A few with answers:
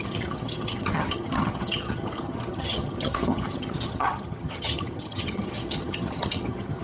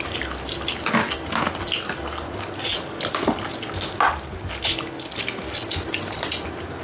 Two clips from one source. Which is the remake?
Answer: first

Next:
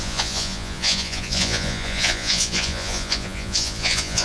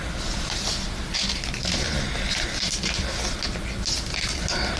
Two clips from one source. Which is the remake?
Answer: first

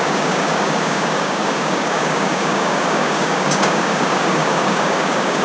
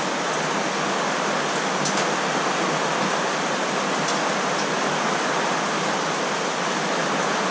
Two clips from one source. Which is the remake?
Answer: first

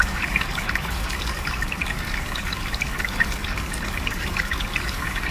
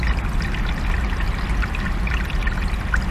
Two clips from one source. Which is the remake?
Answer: first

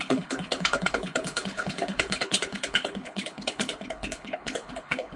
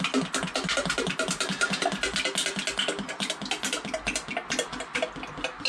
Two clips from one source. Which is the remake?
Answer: first